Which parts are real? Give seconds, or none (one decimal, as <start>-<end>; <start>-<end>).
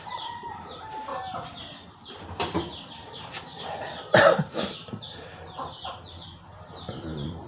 1.1-1.9; 3.5-6.5